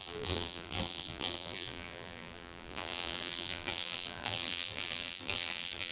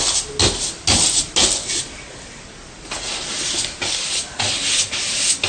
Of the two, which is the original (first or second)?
second